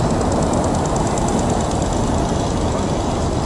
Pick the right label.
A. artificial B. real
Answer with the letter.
B